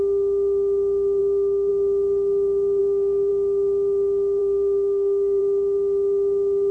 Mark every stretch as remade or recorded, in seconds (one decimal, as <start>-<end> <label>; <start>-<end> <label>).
0.0-1.2 recorded; 1.2-1.7 remade; 1.7-2.8 recorded; 2.8-3.3 remade; 3.3-4.4 recorded; 4.4-5.4 remade; 5.4-6.7 recorded